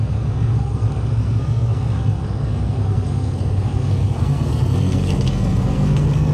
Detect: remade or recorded remade